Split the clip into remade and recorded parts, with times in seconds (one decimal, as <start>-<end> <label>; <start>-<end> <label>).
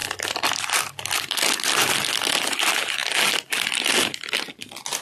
0.0-5.0 recorded